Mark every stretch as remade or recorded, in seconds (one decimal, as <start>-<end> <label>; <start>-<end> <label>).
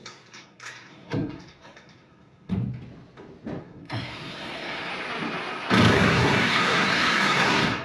0.0-2.5 remade; 2.5-3.6 recorded; 3.6-4.9 remade; 4.9-5.9 recorded; 5.9-7.8 remade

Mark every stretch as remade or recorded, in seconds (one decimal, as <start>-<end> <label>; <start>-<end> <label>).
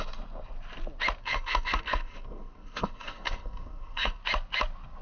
0.0-1.2 recorded; 1.2-4.2 remade; 4.2-5.0 recorded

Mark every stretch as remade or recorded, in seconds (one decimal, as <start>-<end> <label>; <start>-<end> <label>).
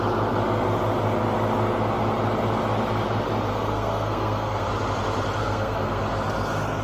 0.0-3.5 recorded; 3.5-4.7 remade; 4.7-5.4 recorded; 5.4-6.0 remade; 6.0-6.8 recorded